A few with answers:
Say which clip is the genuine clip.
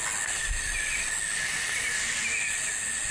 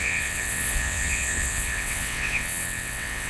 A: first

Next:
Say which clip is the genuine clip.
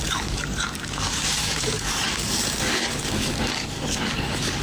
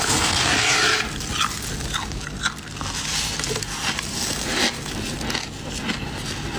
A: second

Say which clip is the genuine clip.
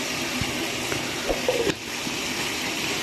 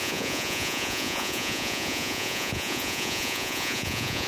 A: first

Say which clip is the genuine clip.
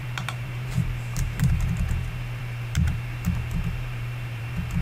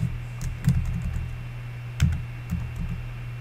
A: second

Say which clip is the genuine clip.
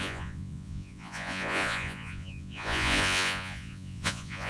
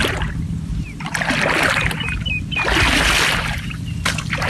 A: second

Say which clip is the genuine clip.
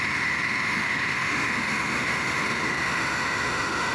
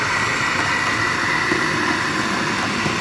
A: second